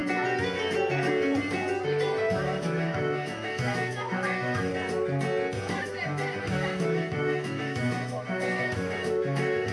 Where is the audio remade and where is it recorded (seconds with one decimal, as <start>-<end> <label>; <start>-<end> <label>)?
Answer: 0.0-2.3 recorded; 2.3-4.7 remade; 4.7-6.4 recorded; 6.4-9.7 remade